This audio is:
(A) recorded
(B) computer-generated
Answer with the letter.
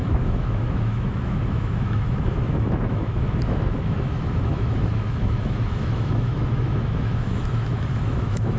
B